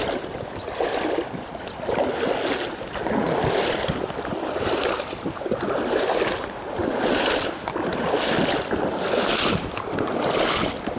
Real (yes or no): yes